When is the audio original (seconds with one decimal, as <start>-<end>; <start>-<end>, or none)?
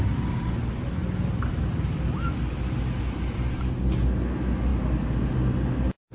0.0-6.1